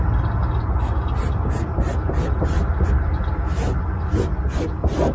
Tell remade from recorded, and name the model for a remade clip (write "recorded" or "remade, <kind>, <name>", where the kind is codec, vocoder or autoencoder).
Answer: recorded